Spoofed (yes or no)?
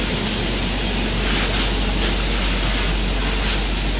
no